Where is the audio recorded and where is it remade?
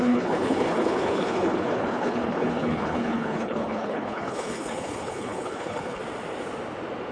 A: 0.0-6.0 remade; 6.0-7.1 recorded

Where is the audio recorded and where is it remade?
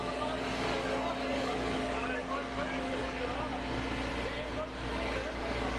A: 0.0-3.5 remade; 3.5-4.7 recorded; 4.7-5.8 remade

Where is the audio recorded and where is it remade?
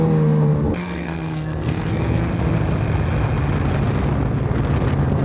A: 0.0-0.8 recorded; 0.8-2.3 remade; 2.3-5.2 recorded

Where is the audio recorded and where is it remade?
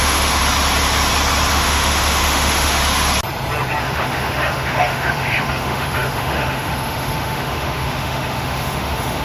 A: 0.0-0.4 remade; 0.4-1.5 recorded; 1.5-2.8 remade; 2.8-3.8 recorded; 3.8-9.2 remade